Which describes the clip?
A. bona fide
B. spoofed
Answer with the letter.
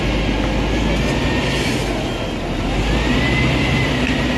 A